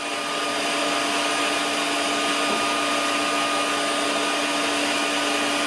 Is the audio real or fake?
real